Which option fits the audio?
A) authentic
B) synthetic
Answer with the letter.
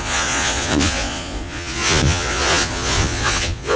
B